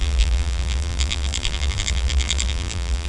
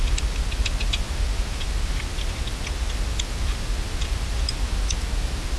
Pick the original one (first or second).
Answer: second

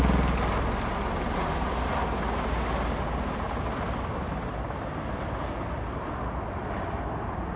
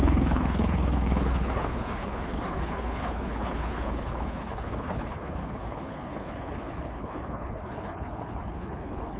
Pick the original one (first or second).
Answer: first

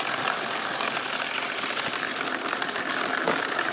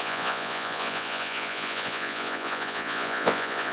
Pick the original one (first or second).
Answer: first